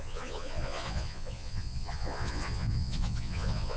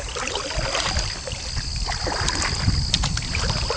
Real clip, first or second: second